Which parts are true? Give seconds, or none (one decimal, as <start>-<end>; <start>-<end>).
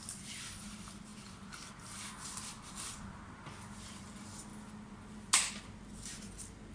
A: 0.0-6.7